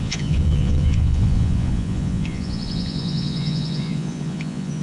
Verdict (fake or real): fake